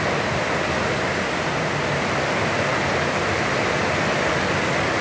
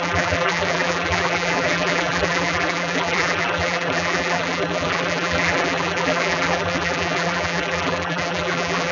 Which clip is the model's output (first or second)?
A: second